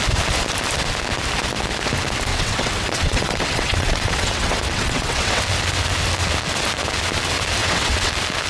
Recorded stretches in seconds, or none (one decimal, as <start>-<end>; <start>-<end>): 0.0-2.3; 5.4-7.6; 8.1-8.5

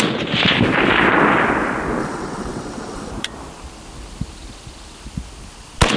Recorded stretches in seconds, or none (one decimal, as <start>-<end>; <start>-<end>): 0.0-2.0; 3.1-6.0

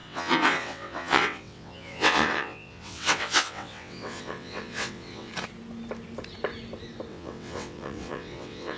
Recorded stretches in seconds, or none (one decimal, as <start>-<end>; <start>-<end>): 5.3-7.1

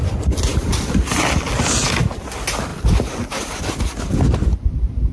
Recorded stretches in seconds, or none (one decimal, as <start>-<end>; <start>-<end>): 0.0-5.1

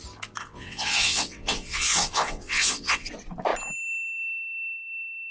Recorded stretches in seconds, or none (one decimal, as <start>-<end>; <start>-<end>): 0.0-0.4; 3.1-5.3

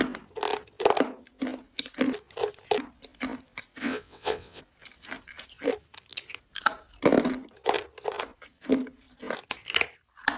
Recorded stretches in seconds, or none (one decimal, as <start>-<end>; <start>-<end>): 0.0-3.8; 4.6-10.4

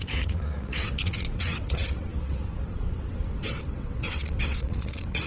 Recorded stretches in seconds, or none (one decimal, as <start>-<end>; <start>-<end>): none